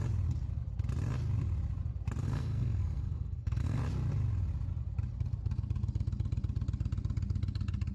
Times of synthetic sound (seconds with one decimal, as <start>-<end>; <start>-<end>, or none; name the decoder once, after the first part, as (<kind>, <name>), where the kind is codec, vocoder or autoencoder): 2.2-3.8 (codec, SNAC)